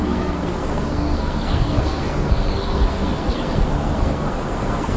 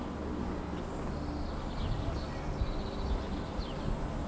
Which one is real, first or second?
second